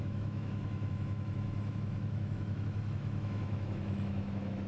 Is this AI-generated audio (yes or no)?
yes